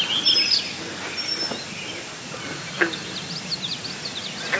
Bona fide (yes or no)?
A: yes